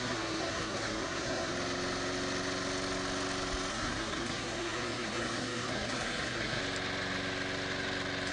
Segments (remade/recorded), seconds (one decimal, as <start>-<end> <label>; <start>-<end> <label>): 0.0-1.5 remade; 1.5-3.7 recorded; 3.7-6.6 remade; 6.6-8.3 recorded